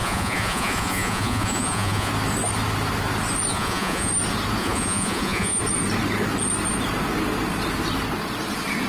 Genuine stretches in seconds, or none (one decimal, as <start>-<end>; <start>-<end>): 2.1-3.5; 4.1-4.6; 5.6-8.9